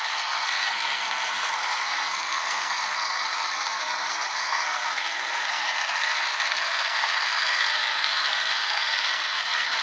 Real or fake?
fake